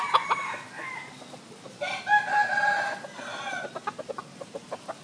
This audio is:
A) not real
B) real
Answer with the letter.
B